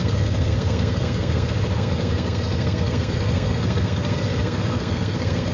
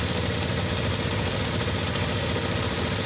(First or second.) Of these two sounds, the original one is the second